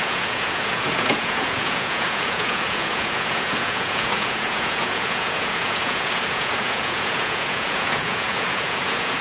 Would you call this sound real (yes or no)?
no